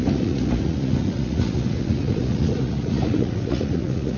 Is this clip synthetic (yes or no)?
yes